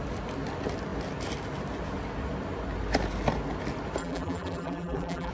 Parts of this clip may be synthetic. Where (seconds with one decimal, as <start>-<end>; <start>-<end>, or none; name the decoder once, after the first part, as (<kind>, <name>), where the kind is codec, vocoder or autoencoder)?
4.0-5.3 (vocoder, BigVGAN v2)